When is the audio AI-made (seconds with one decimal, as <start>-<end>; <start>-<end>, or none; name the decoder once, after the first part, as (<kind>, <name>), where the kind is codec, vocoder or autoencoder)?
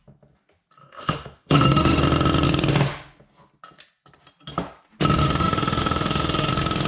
0.8-2.0 (autoencoder, DAC-VAE); 5.2-6.5